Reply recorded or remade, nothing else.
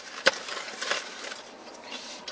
recorded